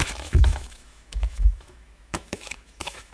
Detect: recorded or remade remade